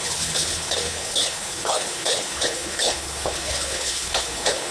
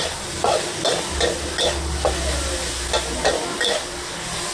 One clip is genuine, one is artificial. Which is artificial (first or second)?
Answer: first